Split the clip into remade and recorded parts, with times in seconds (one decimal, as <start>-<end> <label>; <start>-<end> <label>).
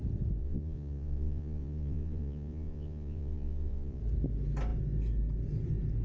0.0-0.4 recorded; 0.4-4.0 remade; 4.0-6.0 recorded